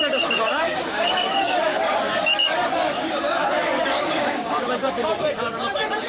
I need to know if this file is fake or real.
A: fake